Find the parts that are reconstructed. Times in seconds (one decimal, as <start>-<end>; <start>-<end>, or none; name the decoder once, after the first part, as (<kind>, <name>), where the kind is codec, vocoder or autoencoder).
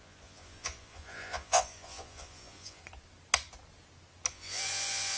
0.0-2.8 (vocoder, Vocos); 4.3-5.2